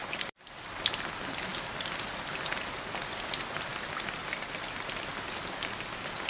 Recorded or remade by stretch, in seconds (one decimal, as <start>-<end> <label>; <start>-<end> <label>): 0.0-6.3 recorded